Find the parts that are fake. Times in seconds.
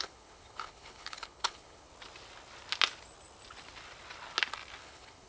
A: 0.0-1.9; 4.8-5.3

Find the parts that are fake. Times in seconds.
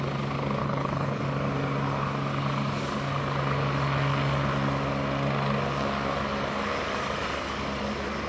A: 0.6-1.2